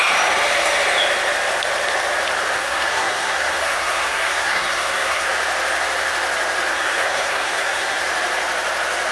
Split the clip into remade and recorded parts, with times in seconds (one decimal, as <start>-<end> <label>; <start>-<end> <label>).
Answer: 0.0-2.6 recorded; 2.6-5.3 remade; 5.3-6.7 recorded; 6.7-8.0 remade; 8.0-9.1 recorded